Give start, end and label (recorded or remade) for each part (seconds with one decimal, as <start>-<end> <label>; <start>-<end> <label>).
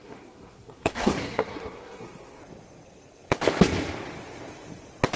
0.0-2.4 remade; 2.4-5.2 recorded